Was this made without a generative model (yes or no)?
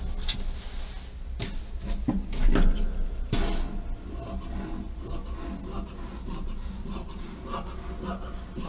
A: yes